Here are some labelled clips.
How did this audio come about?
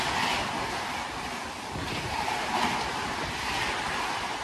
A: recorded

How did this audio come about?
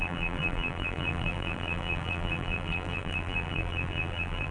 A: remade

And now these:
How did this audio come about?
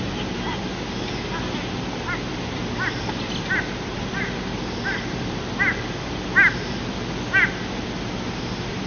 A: recorded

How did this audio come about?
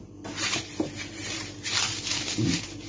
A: recorded